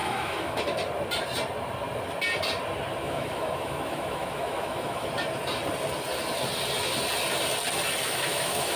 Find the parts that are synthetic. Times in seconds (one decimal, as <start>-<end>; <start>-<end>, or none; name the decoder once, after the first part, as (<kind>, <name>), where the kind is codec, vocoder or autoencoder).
0.0-0.6 (autoencoder, DAC-VAE); 3.0-5.1; 8.0-8.8